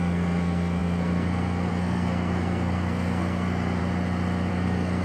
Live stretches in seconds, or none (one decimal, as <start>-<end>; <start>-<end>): 3.8-4.5

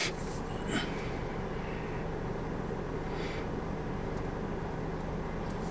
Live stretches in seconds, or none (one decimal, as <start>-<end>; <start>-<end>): 0.0-5.7

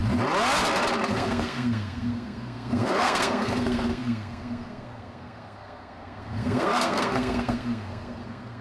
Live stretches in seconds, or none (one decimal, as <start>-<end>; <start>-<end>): 0.0-1.1